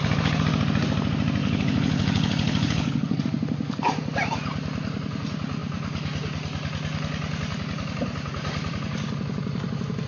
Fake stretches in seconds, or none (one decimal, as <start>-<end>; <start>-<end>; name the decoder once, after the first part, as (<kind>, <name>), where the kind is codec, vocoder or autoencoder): 1.4-3.2 (codec, HILCodec)